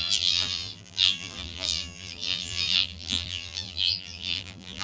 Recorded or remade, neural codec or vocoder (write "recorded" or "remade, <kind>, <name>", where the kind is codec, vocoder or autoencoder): remade, vocoder, BigVGAN v2